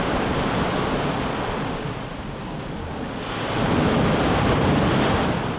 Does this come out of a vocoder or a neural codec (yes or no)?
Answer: no